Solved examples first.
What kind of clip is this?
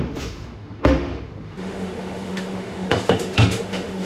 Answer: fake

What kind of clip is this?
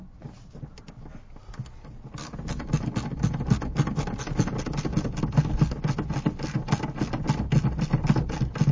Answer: real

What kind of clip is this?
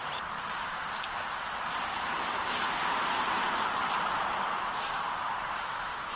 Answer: fake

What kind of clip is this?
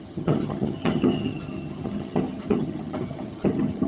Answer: fake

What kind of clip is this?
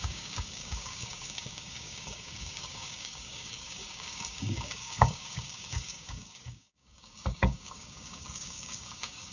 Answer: fake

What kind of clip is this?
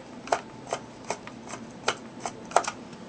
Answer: real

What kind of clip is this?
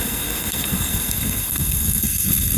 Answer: fake